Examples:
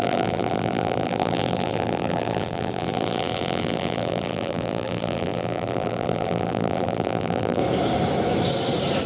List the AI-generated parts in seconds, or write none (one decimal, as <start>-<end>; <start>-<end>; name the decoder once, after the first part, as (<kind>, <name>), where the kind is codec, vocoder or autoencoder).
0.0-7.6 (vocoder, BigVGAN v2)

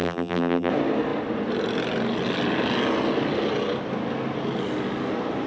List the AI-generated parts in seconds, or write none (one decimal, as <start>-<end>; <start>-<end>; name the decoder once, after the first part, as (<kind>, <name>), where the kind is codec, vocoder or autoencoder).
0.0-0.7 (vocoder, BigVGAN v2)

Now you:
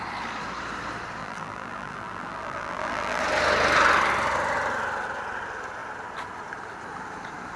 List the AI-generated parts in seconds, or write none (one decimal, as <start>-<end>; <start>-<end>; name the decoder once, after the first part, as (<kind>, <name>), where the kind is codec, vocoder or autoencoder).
1.2-3.2 (vocoder, BigVGAN v2)

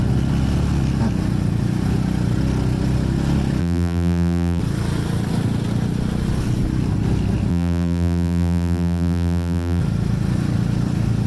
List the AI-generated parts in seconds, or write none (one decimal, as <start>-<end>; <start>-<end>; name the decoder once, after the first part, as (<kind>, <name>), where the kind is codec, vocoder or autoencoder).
3.6-4.6 (vocoder, BigVGAN v2); 7.5-9.8

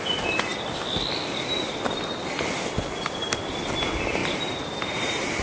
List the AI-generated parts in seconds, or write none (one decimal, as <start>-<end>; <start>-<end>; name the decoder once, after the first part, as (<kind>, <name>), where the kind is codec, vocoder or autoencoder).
4.2-5.4 (vocoder, BigVGAN v2)

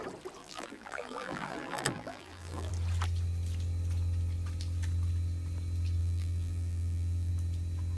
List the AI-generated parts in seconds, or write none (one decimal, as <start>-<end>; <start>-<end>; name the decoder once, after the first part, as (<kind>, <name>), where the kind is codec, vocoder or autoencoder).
0.4-2.7 (vocoder, BigVGAN v2); 6.0-7.3